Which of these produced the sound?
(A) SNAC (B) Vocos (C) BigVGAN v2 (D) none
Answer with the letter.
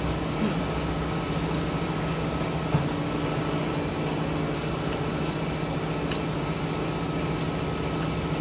C